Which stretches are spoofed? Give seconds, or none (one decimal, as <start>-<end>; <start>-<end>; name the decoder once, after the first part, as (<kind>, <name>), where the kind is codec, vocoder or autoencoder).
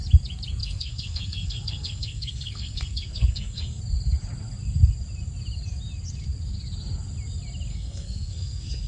0.6-3.8 (codec, SNAC); 7.7-8.9